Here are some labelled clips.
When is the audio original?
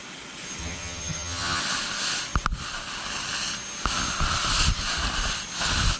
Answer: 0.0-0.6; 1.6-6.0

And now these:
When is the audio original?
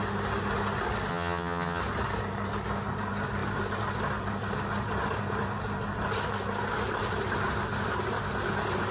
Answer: 0.0-1.1; 1.8-8.9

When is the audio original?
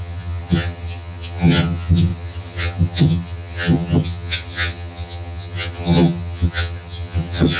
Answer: none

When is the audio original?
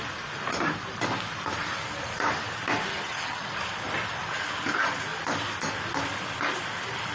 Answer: 0.0-2.9; 3.6-7.1